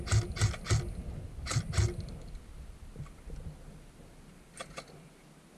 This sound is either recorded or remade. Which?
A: recorded